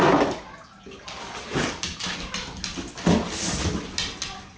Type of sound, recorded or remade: recorded